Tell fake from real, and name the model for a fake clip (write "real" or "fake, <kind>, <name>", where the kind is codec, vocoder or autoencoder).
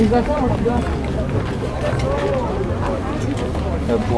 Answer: real